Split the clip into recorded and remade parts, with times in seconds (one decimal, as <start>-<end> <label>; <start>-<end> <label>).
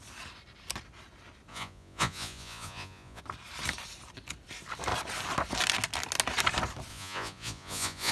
0.0-1.5 recorded; 1.5-3.2 remade; 3.2-6.9 recorded; 6.9-8.1 remade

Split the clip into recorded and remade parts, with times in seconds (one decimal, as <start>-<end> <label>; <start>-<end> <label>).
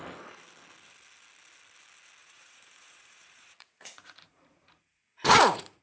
0.0-2.2 recorded; 2.2-5.8 remade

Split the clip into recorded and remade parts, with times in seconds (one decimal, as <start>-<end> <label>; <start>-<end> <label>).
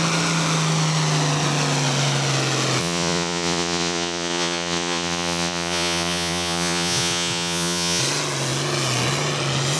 0.0-2.8 recorded; 2.8-8.0 remade; 8.0-9.8 recorded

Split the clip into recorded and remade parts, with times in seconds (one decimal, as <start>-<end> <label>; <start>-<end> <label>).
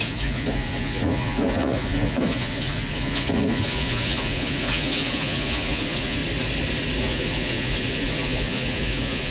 0.0-6.2 remade; 6.2-7.0 recorded; 7.0-9.3 remade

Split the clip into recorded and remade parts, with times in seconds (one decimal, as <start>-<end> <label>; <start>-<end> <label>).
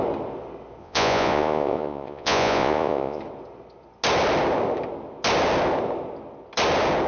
0.0-0.8 recorded; 0.8-3.2 remade; 3.2-7.1 recorded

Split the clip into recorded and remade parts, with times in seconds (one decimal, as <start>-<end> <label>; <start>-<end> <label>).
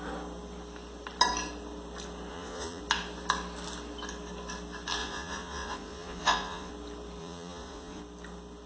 0.0-2.3 recorded; 2.3-2.8 remade; 2.8-5.0 recorded; 5.0-6.7 remade; 6.7-7.2 recorded; 7.2-8.0 remade; 8.0-8.7 recorded